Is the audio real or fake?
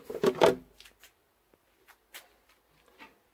real